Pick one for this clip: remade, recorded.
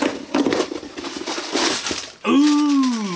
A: recorded